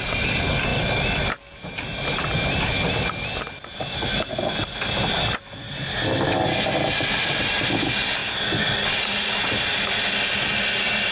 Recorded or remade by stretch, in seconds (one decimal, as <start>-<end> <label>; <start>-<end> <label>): 0.0-11.1 recorded

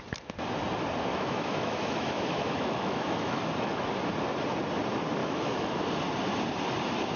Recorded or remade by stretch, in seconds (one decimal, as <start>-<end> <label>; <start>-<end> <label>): 0.0-1.1 recorded; 1.1-3.9 remade; 3.9-5.2 recorded; 5.2-5.8 remade; 5.8-7.2 recorded

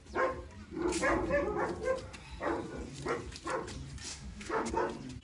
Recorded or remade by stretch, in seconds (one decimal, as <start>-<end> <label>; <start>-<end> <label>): 0.0-4.1 recorded; 4.1-4.7 remade; 4.7-5.2 recorded

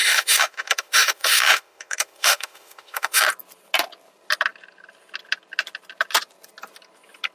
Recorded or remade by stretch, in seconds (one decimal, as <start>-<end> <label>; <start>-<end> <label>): 0.0-3.2 remade; 3.2-7.3 recorded

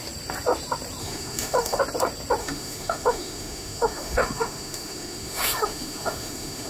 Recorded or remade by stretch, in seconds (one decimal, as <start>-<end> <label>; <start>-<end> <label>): 0.0-1.0 recorded; 1.0-1.8 remade; 1.8-2.4 recorded; 2.4-6.7 remade

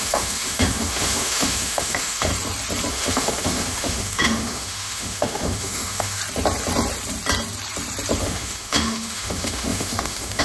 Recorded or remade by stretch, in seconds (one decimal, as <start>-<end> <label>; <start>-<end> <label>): 0.0-2.3 remade; 2.3-2.9 recorded; 2.9-6.2 remade; 6.2-8.2 recorded; 8.2-10.4 remade

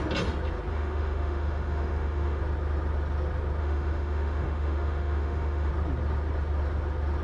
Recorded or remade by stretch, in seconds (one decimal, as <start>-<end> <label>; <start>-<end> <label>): 0.0-0.7 recorded; 0.7-2.4 remade; 2.4-3.6 recorded; 3.6-5.7 remade; 5.7-7.2 recorded